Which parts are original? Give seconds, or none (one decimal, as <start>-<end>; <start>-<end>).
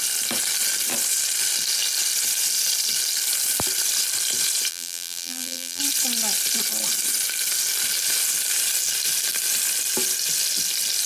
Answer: 0.0-4.7; 5.8-11.1